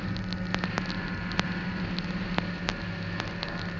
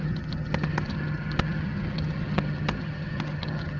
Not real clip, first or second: second